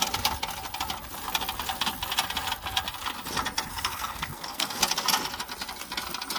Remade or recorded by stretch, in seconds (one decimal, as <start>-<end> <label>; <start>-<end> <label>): 0.0-3.7 recorded; 3.7-4.8 remade; 4.8-6.4 recorded